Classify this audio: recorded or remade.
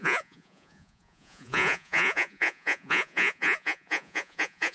remade